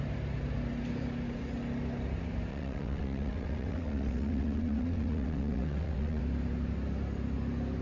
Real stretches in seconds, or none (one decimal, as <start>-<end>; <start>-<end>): 0.0-2.5; 6.2-7.8